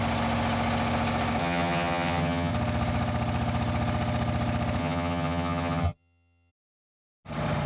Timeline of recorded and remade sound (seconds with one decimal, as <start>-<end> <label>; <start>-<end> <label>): 0.0-1.4 recorded; 1.4-2.5 remade; 2.5-4.8 recorded; 4.8-6.5 remade; 6.5-7.7 recorded